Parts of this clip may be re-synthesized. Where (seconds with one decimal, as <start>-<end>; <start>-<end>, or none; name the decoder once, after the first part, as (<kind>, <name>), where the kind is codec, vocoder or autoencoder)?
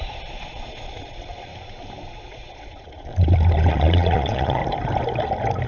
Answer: 0.0-1.5 (vocoder, Vocos); 2.1-3.1; 3.7-4.6